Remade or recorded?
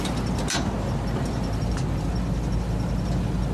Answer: recorded